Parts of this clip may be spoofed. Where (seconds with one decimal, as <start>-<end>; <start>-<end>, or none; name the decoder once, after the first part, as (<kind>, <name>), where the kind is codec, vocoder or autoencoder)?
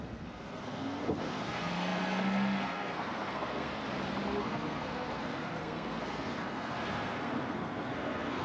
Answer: 0.0-3.8 (codec, SNAC); 4.4-8.4